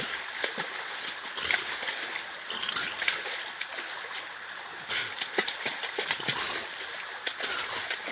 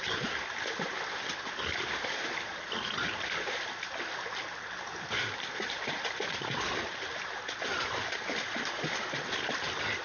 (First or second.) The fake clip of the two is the second